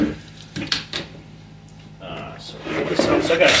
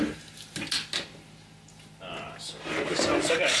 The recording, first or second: second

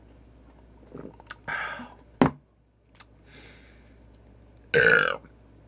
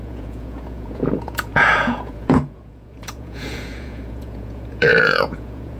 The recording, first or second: first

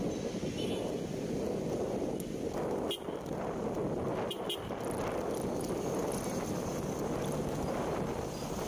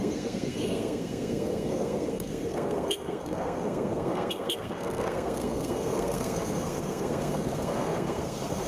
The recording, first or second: first